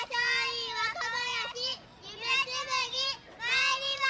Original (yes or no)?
no